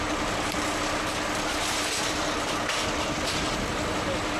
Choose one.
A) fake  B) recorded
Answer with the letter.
B